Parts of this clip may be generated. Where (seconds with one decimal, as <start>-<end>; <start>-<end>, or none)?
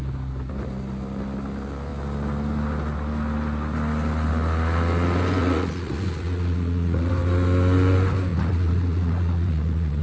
5.4-7.1; 8.3-10.0